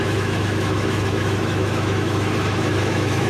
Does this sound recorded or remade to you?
remade